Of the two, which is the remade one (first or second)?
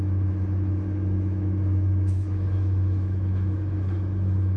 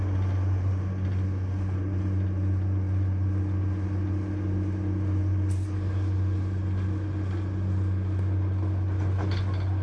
first